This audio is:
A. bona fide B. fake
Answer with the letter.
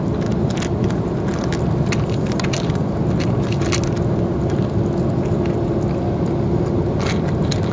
A